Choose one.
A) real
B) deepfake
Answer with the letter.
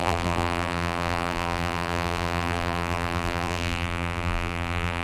B